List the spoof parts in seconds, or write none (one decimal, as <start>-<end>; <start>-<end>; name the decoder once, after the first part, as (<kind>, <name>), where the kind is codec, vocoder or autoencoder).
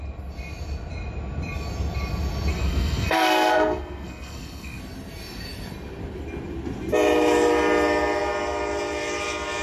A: 2.5-4.8 (codec, SNAC)